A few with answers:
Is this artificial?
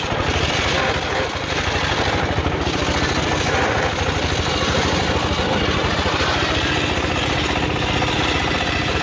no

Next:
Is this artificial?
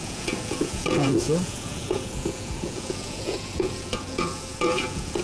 yes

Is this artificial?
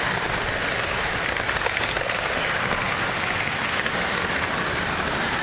no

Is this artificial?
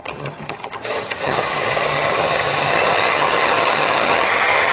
yes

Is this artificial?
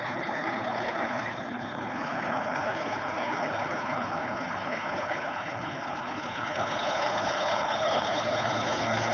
yes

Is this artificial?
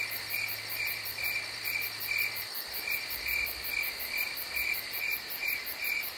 no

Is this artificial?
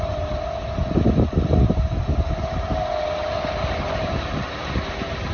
no